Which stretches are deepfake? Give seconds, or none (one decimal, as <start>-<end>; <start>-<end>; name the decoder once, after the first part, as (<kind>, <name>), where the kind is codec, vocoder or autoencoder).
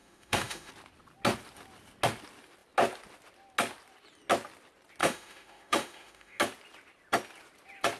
0.0-0.7 (autoencoder, DAC-VAE); 5.0-6.4